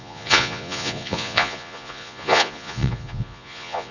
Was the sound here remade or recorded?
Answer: remade